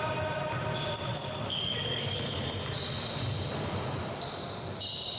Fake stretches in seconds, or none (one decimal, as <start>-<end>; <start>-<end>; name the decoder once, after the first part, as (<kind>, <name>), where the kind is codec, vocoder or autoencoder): 1.1-2.5 (codec, DAC)